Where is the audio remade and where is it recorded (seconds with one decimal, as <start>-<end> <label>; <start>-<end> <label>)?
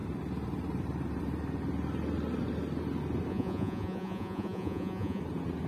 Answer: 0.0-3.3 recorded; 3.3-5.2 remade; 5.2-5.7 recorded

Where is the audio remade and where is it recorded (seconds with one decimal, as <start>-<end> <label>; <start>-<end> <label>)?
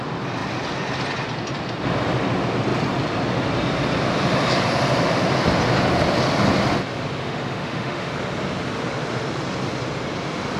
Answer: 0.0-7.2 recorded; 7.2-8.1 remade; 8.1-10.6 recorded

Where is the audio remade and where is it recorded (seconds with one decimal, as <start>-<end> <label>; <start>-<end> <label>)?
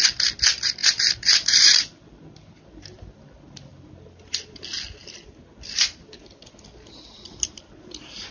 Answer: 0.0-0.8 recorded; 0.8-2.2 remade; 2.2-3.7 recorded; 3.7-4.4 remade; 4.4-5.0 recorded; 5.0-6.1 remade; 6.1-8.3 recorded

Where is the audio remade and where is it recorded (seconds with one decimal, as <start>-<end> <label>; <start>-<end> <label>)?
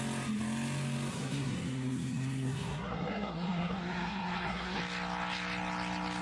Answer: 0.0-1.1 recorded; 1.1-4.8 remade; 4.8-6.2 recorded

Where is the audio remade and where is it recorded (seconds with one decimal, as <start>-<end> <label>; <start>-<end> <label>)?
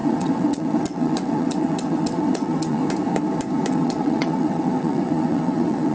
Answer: 0.0-2.8 remade; 2.8-3.7 recorded; 3.7-5.9 remade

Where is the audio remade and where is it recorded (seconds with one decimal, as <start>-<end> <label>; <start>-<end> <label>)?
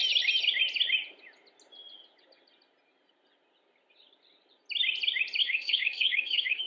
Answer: 0.0-5.4 recorded; 5.4-6.7 remade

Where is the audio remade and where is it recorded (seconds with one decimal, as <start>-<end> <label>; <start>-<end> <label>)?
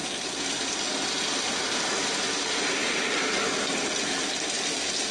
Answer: 0.0-5.1 recorded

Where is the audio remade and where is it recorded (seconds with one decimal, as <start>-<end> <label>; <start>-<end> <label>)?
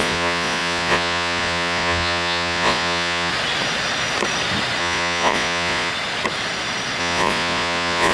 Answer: 0.0-3.3 remade; 3.3-4.8 recorded; 4.8-5.9 remade; 5.9-7.0 recorded; 7.0-8.1 remade